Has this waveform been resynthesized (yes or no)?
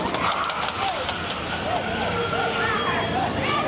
yes